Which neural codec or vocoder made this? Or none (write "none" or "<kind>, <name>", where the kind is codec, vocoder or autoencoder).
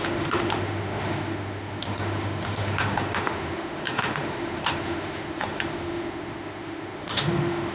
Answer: autoencoder, DAC-VAE